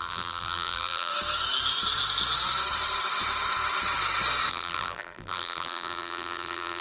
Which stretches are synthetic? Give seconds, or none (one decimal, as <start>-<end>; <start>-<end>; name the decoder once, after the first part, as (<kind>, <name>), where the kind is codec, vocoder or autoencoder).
0.0-1.1 (vocoder, BigVGAN v2); 4.5-6.8